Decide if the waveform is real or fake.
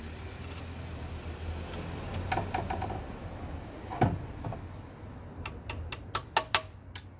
real